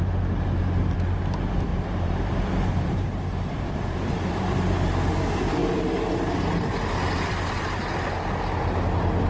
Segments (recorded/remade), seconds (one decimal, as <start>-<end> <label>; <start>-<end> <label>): 0.0-1.7 recorded; 1.7-5.1 remade; 5.1-9.3 recorded